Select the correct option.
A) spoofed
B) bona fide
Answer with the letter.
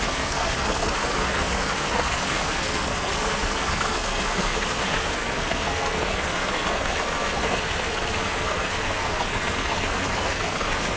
A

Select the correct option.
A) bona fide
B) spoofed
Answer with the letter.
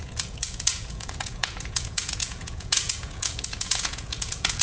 B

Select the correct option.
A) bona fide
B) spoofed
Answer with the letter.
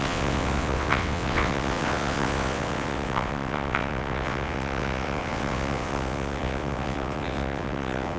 B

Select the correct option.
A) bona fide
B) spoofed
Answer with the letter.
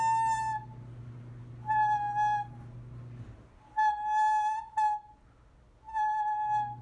A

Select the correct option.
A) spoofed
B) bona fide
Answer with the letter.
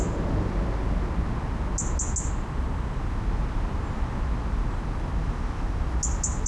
B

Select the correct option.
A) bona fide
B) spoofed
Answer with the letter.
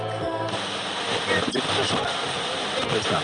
A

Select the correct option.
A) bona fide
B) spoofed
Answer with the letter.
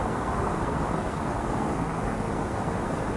B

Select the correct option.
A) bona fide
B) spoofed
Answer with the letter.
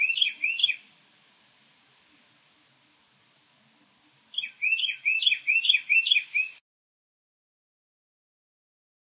A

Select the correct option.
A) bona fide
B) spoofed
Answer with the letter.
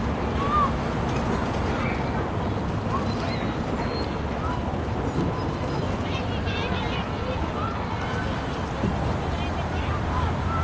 A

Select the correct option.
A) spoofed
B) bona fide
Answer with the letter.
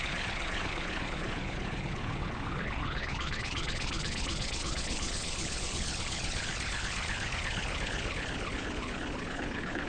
A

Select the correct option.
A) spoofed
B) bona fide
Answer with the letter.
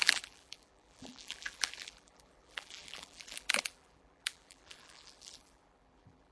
A